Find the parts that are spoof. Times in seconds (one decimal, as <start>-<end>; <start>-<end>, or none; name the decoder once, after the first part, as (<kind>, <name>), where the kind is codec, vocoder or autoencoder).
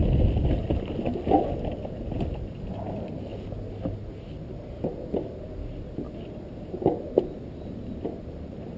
none